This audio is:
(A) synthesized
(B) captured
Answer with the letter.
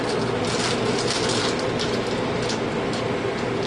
B